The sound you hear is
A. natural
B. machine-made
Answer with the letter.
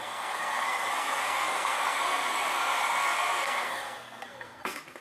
B